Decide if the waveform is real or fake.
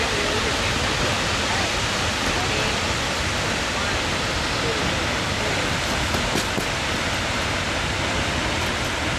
real